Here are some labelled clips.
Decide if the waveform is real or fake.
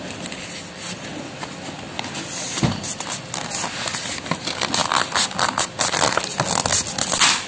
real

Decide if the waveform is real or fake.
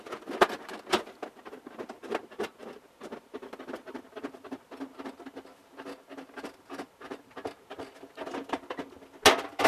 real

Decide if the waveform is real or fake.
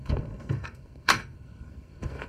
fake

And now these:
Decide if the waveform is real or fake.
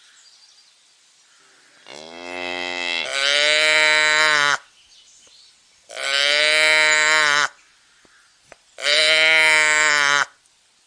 real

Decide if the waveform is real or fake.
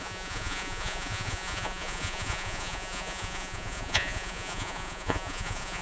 fake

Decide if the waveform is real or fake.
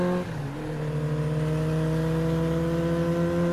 real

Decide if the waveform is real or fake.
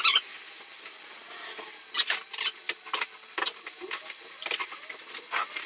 real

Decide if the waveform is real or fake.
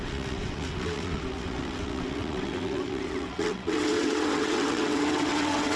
fake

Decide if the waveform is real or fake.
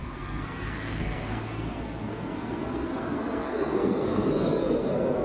fake